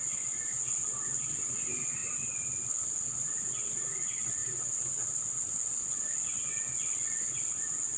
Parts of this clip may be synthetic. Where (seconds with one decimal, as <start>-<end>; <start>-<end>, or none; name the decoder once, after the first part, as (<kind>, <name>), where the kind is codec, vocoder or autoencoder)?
0.0-2.0 (vocoder, WaveNeXt); 2.7-8.0